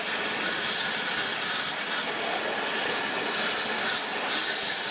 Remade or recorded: recorded